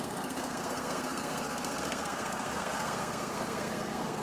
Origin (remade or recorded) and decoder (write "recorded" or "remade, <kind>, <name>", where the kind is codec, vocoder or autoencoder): remade, codec, SNAC